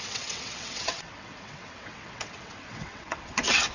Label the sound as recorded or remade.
remade